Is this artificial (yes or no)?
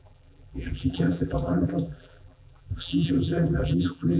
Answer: yes